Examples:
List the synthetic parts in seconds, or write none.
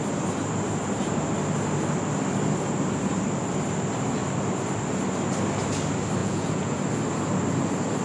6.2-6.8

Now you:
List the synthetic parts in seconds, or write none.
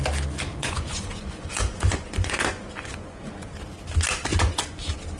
0.5-3.5; 4.3-4.8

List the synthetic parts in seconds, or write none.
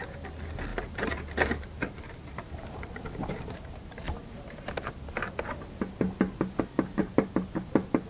0.7-4.7; 7.0-8.1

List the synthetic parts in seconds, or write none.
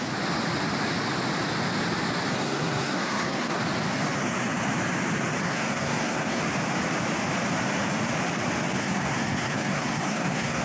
2.3-3.6; 5.4-6.4; 8.8-10.6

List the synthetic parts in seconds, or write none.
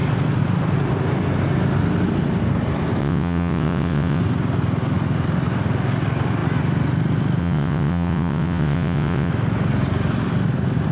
3.0-4.2; 7.4-9.3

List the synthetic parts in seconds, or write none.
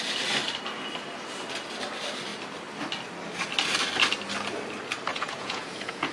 5.1-6.1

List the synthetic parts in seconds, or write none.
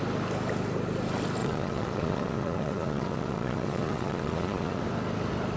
1.4-4.8